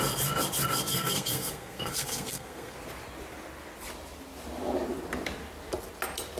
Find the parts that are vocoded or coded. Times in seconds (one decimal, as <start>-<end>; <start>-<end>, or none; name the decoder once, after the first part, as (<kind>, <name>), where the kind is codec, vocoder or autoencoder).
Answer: 0.9-2.7 (codec, SNAC)